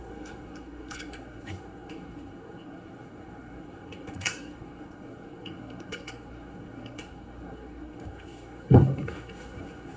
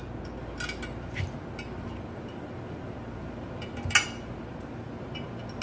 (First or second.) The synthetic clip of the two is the first